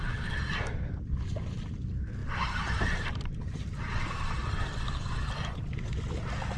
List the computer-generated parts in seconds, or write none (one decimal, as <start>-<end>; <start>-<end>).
2.2-3.9